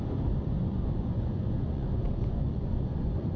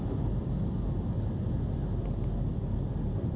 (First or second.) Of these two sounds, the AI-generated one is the first